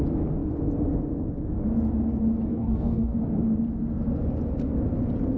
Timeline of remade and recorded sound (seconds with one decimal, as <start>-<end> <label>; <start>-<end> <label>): 0.0-2.5 recorded; 2.5-3.2 remade; 3.2-5.4 recorded